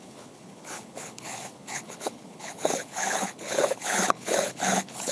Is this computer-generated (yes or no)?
yes